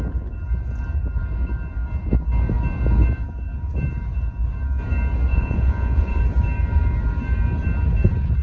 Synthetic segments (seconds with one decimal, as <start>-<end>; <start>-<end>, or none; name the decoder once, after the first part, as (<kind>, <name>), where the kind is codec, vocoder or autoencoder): 5.3-6.2 (vocoder, Vocos)